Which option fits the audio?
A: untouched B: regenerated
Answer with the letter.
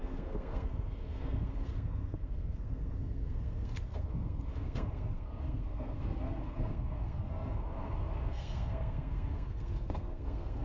B